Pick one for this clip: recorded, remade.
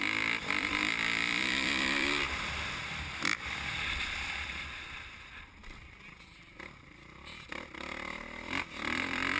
remade